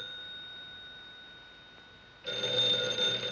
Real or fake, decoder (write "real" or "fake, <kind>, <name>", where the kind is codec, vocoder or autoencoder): real